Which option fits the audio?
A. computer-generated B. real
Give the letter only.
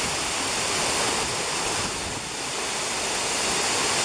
B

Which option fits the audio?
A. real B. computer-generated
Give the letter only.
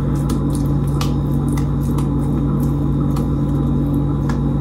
A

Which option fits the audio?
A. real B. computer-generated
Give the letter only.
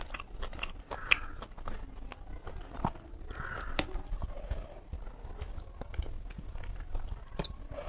A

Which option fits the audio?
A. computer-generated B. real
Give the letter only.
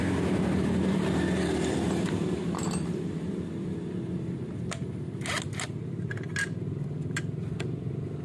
A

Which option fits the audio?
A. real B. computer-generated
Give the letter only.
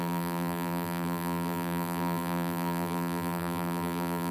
B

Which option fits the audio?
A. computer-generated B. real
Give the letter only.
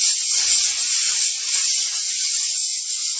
B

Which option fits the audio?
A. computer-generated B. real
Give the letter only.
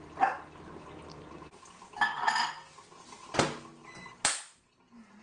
B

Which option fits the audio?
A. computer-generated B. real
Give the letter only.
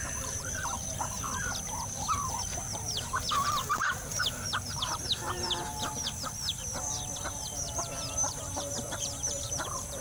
A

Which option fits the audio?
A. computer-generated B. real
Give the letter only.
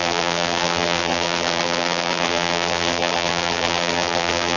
A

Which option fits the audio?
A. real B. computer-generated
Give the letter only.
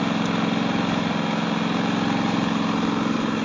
A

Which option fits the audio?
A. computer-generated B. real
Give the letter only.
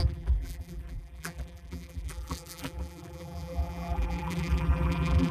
A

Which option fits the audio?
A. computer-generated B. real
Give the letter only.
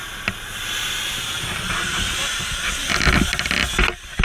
A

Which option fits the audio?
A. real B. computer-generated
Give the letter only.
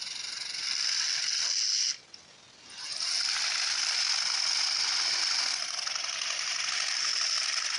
A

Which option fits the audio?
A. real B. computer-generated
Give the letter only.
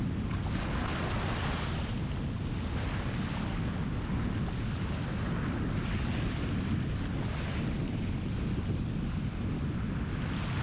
A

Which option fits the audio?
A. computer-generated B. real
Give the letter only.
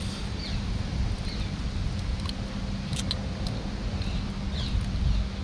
B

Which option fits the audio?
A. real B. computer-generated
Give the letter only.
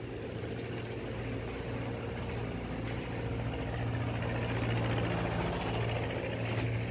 A